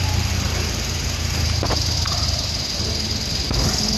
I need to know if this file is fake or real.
real